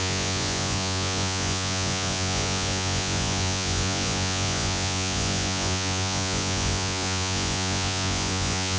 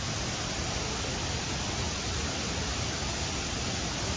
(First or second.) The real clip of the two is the second